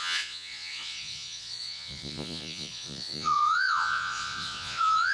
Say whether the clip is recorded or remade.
remade